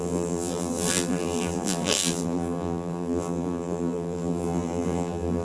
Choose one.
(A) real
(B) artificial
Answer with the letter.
B